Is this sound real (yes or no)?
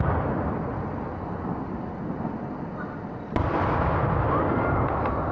yes